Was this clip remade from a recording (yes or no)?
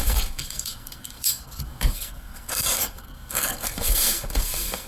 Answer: yes